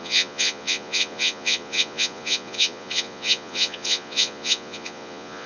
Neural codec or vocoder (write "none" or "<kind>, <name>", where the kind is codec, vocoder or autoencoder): vocoder, Vocos